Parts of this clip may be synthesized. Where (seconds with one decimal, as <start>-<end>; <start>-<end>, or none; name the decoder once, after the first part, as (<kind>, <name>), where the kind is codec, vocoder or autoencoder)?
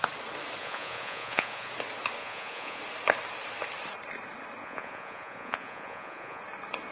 0.6-1.7 (vocoder, Vocos); 2.2-2.8; 4.6-6.4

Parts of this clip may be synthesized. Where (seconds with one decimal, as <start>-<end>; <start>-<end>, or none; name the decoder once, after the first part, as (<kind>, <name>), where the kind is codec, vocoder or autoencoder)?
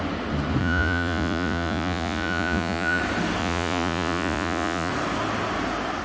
0.6-3.0 (vocoder, Vocos); 3.4-4.9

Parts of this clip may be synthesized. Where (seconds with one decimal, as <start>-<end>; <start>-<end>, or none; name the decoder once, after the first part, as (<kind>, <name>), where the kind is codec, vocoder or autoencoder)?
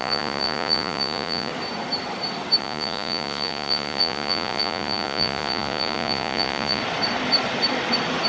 0.0-1.5 (vocoder, Vocos); 2.6-6.8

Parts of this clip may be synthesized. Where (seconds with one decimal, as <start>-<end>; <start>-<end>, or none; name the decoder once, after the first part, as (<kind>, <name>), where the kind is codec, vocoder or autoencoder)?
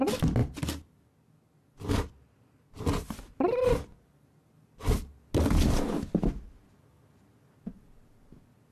none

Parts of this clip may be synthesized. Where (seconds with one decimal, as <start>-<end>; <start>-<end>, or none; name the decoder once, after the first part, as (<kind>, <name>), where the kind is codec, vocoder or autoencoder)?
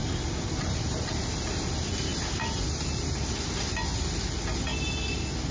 none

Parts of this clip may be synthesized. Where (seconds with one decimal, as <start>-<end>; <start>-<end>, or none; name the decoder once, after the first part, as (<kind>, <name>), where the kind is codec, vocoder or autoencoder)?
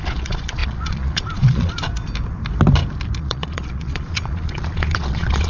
0.0-1.9 (vocoder, Vocos); 3.2-5.5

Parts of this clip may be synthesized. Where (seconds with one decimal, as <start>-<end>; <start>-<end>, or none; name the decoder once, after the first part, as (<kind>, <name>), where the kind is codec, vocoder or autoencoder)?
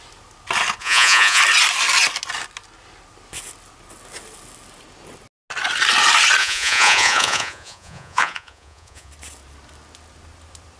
0.8-1.4 (vocoder, Vocos); 6.4-9.1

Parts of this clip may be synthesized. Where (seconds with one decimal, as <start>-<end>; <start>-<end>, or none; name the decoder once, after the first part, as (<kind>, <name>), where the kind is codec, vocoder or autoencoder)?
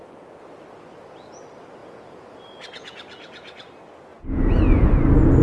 1.8-3.5 (vocoder, Vocos); 4.1-4.9